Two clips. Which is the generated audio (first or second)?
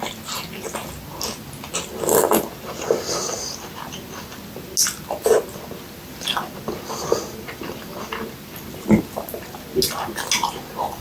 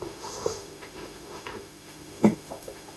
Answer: second